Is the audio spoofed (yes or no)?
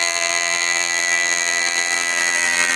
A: yes